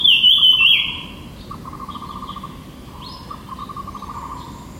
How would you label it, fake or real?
real